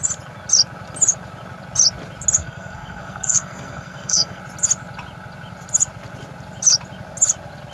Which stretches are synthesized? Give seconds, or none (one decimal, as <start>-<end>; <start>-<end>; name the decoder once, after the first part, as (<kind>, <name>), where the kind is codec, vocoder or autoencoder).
2.4-4.4 (codec, SNAC)